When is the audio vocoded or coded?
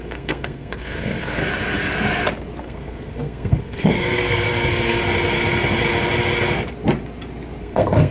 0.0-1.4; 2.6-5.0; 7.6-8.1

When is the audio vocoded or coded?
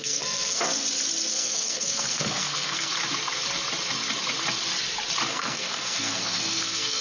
0.0-0.6; 1.3-2.9; 5.3-7.0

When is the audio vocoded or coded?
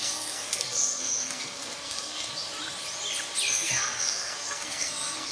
0.0-2.3; 3.5-5.3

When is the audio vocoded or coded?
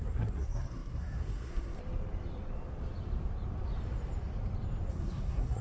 0.0-1.8; 4.9-5.6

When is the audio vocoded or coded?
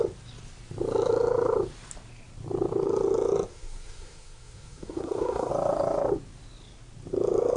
3.5-5.5